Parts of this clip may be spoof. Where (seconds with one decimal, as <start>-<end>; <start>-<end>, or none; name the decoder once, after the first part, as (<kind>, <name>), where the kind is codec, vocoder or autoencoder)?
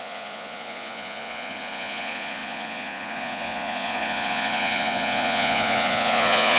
0.0-6.6 (vocoder, Vocos)